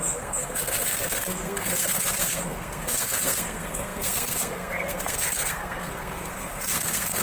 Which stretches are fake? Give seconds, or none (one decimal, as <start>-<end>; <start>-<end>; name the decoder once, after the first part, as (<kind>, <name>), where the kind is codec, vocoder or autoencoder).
0.0-7.2 (codec, SNAC)